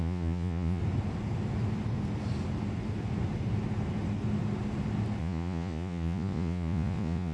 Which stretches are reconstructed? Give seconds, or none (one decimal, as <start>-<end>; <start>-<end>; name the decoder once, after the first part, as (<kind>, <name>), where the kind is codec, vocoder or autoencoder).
0.0-0.8 (vocoder, Vocos); 5.2-7.3